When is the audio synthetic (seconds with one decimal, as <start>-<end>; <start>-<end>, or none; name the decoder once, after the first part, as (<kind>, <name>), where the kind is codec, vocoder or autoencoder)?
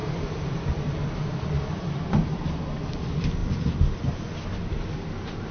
0.0-2.8 (vocoder, BigVGAN v2); 3.4-5.5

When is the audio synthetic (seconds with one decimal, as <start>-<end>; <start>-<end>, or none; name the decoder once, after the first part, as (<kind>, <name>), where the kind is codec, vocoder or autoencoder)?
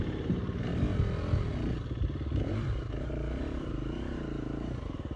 0.0-0.7 (vocoder, BigVGAN v2); 3.4-5.2